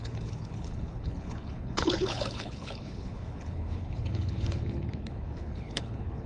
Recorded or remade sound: remade